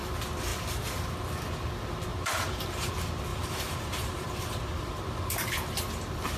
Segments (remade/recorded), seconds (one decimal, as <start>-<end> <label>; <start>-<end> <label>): 0.0-2.1 recorded; 2.1-2.9 remade; 2.9-3.3 recorded; 3.3-5.8 remade; 5.8-6.4 recorded